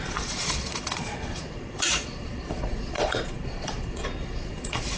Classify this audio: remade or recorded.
remade